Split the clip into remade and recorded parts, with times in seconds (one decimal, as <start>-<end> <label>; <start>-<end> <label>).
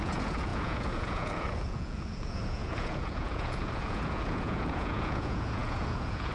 0.0-6.3 remade